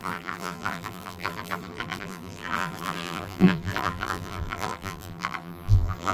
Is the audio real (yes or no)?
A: no